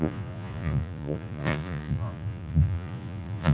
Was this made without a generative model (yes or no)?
no